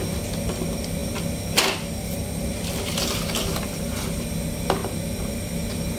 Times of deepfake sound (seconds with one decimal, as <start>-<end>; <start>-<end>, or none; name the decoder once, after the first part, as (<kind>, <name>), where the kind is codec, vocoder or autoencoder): none